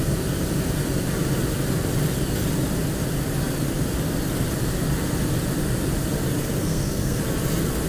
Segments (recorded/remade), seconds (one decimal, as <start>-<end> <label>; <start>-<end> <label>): 0.0-6.6 recorded; 6.6-7.2 remade; 7.2-7.9 recorded